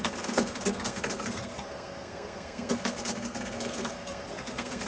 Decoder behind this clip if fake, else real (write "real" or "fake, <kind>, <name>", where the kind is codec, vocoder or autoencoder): fake, codec, SNAC